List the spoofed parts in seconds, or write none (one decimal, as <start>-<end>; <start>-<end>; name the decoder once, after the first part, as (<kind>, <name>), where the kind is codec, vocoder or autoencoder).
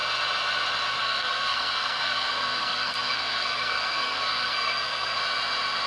1.0-5.2 (codec, SNAC)